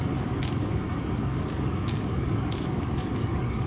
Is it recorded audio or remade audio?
remade